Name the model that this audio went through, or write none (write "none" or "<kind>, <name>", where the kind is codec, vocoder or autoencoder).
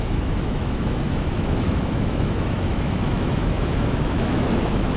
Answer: autoencoder, DAC-VAE